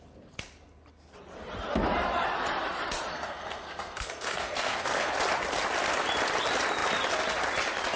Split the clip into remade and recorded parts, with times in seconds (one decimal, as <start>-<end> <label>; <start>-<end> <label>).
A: 0.0-3.1 recorded; 3.1-5.1 remade; 5.1-8.0 recorded